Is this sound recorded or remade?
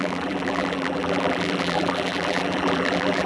remade